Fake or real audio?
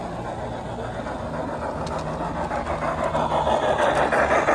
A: real